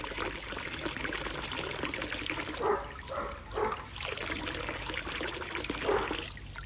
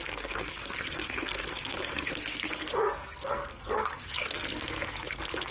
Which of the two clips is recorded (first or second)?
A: first